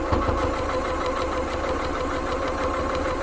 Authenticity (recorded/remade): recorded